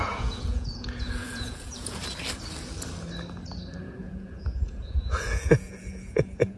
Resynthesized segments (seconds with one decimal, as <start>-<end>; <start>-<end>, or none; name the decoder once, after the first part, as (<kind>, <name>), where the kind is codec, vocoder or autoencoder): 0.0-2.0 (vocoder, Vocos); 3.8-6.6

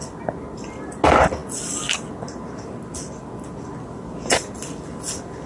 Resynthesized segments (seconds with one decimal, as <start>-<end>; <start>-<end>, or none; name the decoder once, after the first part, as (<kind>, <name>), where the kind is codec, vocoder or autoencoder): none